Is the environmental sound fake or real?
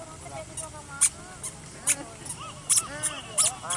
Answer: real